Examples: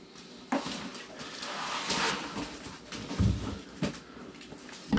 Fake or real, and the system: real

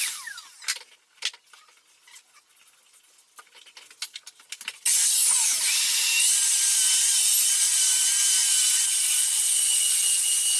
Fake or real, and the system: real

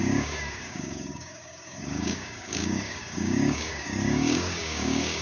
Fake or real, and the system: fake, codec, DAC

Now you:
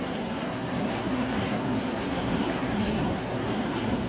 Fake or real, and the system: fake, codec, SNAC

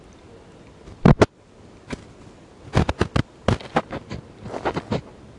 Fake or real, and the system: real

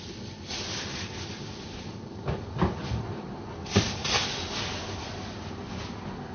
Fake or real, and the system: real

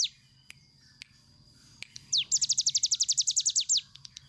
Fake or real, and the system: real